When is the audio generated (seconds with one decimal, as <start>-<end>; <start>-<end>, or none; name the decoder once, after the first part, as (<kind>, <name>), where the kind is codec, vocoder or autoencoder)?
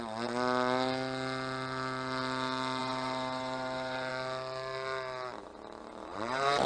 2.8-4.1 (vocoder, BigVGAN v2); 5.9-6.7